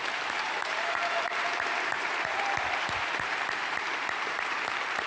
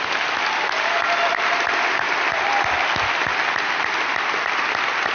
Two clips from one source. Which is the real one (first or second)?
second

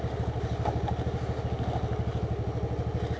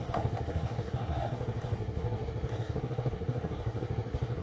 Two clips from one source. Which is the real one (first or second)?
first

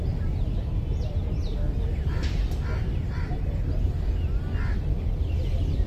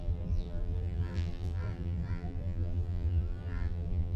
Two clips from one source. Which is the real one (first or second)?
first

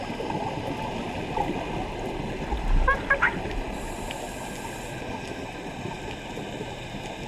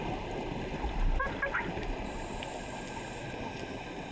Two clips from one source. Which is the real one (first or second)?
first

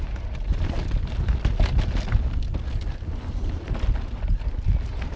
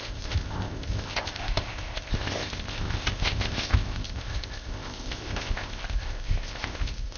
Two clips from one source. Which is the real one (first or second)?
first